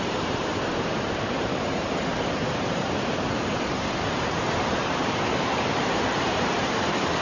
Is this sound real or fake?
fake